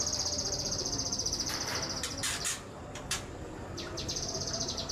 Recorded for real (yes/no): no